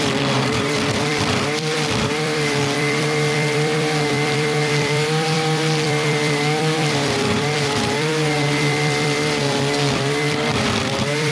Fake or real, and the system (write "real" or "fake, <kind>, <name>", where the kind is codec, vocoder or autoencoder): fake, vocoder, BigVGAN v2